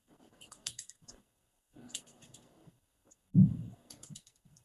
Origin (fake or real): fake